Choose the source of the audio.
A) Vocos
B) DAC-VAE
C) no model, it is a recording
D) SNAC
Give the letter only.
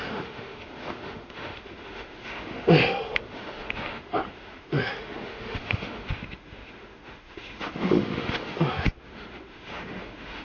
B